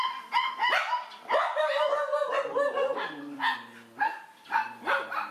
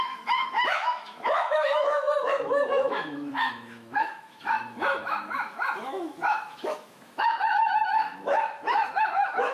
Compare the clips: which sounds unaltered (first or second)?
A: first